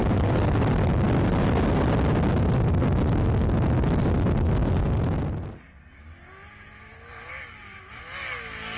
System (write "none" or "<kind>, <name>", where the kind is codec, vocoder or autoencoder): none